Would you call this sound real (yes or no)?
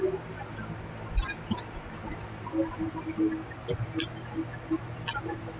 yes